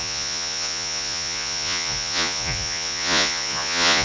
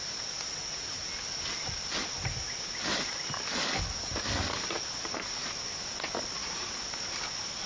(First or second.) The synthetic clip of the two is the first